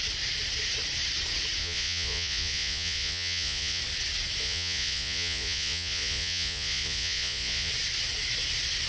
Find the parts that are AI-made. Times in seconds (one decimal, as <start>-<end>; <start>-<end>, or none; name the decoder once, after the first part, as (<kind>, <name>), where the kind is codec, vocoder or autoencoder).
1.6-3.8 (vocoder, Vocos); 4.4-7.7